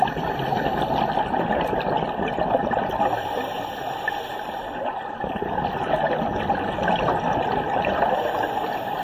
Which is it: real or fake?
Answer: real